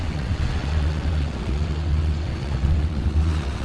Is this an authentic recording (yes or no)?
no